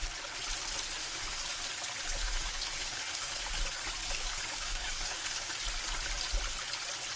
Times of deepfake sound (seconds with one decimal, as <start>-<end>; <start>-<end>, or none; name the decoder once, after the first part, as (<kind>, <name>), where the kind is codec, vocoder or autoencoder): 1.0-1.7 (codec, DAC); 2.2-3.4; 4.0-5.5